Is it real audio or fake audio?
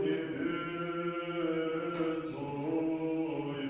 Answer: real